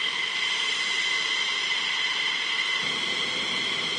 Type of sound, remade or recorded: recorded